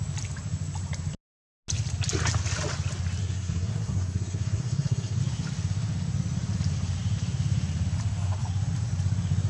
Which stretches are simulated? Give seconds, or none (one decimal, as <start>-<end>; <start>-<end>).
3.2-5.2